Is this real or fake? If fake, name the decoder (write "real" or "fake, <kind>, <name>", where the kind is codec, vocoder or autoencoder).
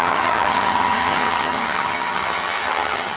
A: fake, vocoder, HiFi-GAN